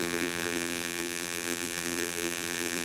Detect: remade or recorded remade